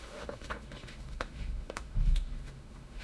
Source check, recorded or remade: remade